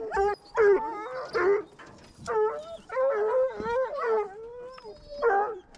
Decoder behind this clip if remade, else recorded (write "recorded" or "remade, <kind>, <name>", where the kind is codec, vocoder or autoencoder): recorded